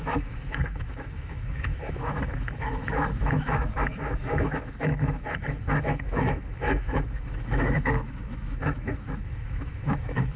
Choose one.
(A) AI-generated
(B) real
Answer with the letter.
A